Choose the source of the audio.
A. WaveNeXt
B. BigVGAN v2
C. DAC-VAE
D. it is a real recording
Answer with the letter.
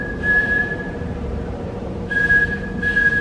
B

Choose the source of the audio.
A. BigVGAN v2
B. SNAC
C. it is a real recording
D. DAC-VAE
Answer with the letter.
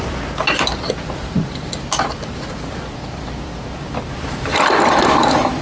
C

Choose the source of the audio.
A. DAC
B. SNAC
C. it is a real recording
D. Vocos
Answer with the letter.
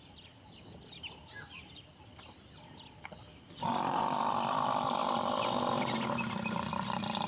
C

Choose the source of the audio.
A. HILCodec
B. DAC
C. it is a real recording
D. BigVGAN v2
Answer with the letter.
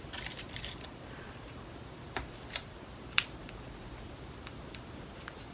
D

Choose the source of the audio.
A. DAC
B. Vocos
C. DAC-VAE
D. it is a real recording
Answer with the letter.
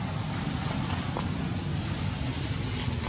D